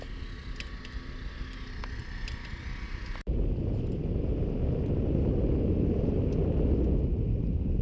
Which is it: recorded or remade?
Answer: recorded